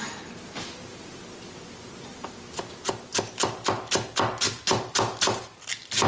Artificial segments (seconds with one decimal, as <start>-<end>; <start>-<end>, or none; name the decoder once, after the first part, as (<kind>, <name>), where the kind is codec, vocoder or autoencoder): none